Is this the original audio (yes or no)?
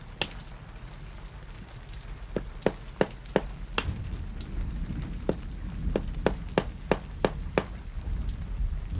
yes